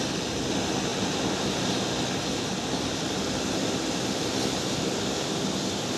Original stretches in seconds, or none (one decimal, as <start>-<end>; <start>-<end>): 0.0-6.0